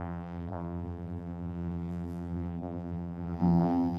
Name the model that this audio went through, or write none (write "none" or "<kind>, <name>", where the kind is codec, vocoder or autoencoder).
vocoder, BigVGAN v2